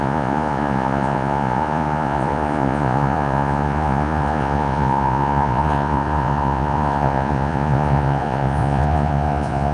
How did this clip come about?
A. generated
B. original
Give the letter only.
A